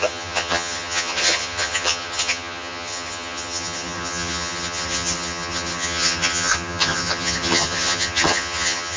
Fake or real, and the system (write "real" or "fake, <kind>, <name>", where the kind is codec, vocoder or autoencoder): fake, vocoder, HiFi-GAN